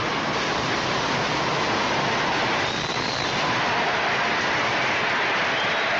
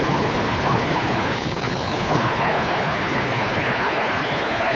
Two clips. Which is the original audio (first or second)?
first